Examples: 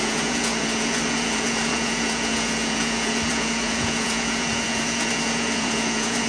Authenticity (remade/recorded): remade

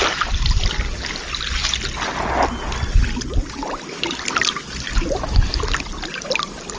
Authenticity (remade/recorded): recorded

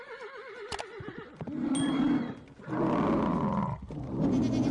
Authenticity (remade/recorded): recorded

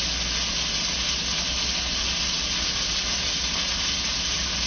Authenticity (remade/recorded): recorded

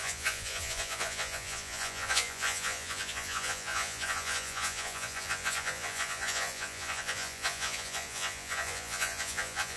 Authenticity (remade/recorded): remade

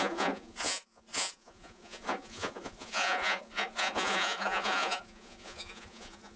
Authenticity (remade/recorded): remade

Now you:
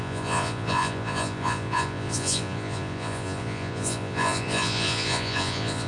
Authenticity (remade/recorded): remade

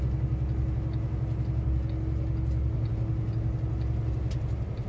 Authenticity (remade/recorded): recorded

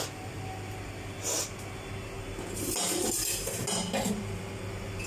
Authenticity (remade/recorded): recorded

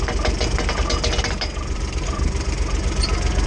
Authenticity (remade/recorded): recorded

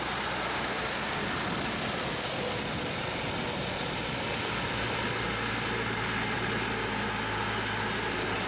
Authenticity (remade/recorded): recorded